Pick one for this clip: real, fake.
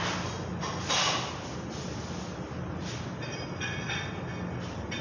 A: real